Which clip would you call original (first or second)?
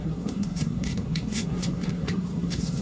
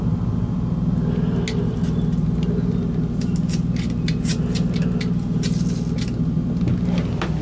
second